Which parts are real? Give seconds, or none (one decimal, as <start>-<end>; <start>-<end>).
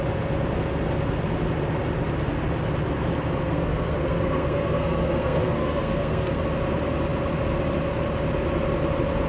0.0-3.4; 6.4-9.3